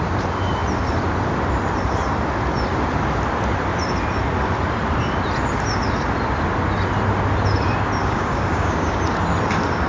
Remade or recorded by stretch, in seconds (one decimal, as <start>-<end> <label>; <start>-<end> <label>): 0.0-8.0 recorded; 8.0-9.0 remade; 9.0-9.9 recorded